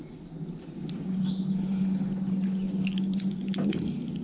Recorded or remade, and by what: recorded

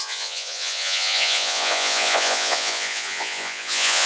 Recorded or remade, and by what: remade, vocoder, Vocos